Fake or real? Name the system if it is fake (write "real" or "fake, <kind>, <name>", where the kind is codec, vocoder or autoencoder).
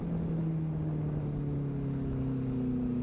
real